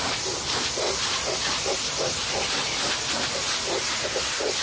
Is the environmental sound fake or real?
real